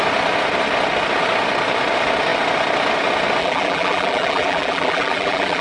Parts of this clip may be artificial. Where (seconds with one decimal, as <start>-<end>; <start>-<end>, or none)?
3.4-5.6